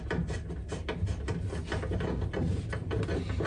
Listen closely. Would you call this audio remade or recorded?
recorded